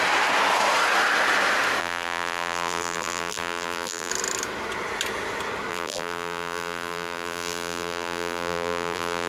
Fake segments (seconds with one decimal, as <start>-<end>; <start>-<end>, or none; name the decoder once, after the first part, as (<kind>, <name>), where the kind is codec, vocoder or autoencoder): 1.8-4.1 (vocoder, BigVGAN v2); 5.7-9.3